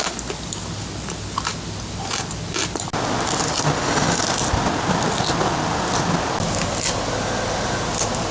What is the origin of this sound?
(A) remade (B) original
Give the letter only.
B